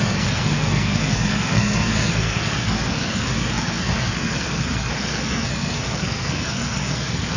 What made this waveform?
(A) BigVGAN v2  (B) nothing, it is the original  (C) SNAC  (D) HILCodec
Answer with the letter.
C